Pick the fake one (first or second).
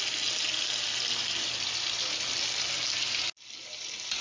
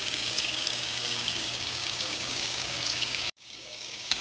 second